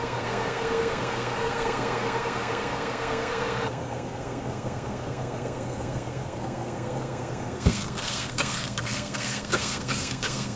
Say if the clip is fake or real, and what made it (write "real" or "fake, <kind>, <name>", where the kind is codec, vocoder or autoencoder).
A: fake, codec, SNAC